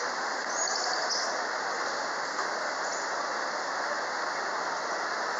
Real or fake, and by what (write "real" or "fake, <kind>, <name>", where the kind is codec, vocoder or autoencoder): real